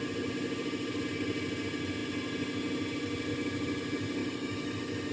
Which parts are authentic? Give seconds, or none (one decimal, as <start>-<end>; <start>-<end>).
0.0-4.2